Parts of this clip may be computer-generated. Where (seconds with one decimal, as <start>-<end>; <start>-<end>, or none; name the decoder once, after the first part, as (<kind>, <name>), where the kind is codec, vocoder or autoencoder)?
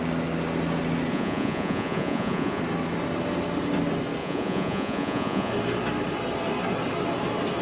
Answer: 1.1-2.6 (vocoder, Vocos); 4.2-5.5